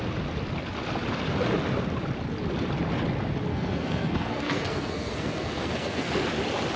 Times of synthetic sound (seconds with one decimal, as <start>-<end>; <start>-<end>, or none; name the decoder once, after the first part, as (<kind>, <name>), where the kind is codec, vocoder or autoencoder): 3.5-6.1 (codec, SNAC)